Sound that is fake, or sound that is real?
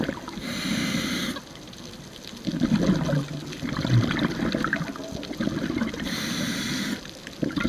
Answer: real